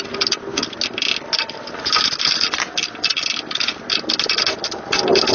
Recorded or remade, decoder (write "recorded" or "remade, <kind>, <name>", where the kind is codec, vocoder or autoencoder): recorded